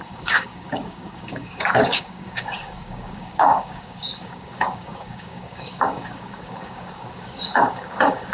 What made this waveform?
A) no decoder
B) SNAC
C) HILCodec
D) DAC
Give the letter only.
D